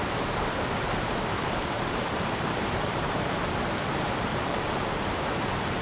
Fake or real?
fake